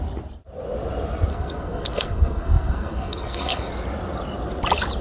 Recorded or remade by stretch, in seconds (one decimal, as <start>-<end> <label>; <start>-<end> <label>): 0.0-1.3 recorded; 1.3-3.7 remade; 3.7-5.0 recorded